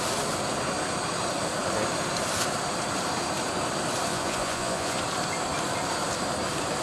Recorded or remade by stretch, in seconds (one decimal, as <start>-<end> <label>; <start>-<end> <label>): 0.0-4.1 recorded; 4.1-5.0 remade; 5.0-6.8 recorded